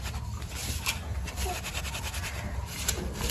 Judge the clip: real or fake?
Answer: real